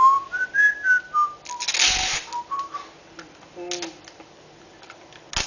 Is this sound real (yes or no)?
yes